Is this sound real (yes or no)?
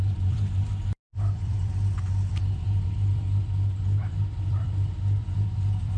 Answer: no